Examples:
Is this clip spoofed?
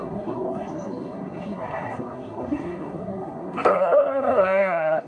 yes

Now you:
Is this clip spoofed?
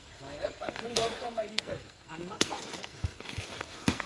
yes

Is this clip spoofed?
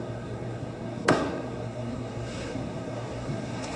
yes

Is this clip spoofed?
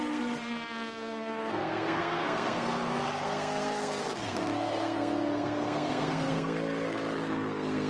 yes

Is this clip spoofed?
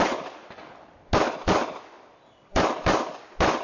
no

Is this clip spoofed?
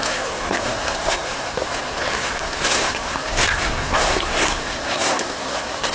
yes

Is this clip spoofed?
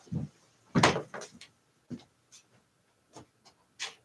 no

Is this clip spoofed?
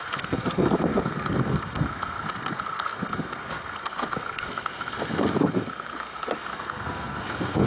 yes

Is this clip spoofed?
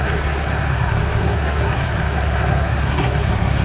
yes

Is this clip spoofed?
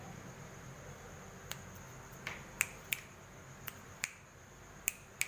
no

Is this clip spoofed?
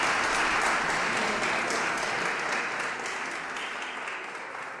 no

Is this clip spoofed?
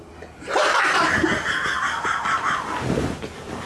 no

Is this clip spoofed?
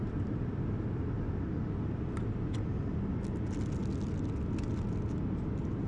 no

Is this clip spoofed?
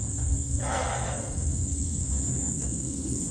yes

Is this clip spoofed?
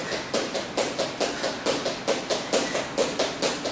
no